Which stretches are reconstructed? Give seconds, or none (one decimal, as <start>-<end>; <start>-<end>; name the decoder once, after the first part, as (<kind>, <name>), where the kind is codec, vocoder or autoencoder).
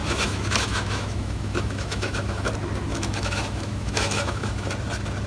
0.0-2.5 (autoencoder, DAC-VAE); 2.9-4.7